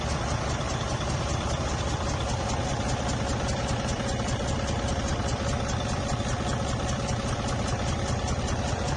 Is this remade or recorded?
recorded